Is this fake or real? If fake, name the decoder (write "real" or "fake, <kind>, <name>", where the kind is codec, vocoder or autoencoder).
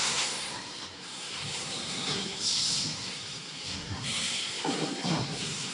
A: fake, codec, SNAC